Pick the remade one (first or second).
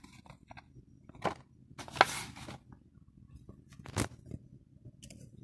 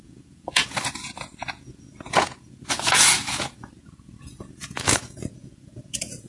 second